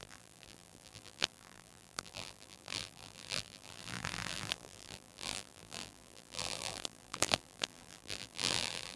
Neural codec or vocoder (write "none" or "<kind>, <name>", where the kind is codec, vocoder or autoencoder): vocoder, BigVGAN v2